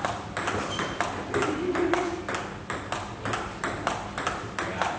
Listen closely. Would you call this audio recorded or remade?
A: recorded